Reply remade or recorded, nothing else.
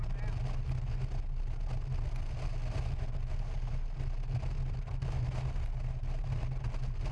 recorded